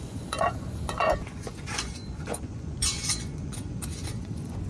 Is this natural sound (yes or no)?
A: no